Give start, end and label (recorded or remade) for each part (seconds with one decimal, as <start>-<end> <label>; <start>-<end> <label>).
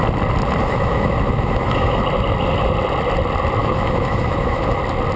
0.0-0.6 recorded; 0.6-2.0 remade; 2.0-3.6 recorded; 3.6-4.8 remade; 4.8-5.2 recorded